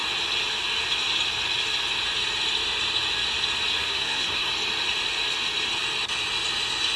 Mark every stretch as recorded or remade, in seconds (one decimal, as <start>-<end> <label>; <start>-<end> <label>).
0.0-3.8 recorded; 3.8-4.5 remade; 4.5-7.0 recorded